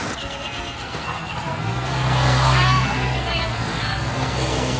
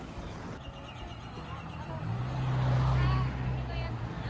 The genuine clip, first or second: second